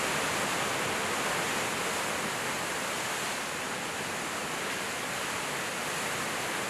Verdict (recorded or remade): recorded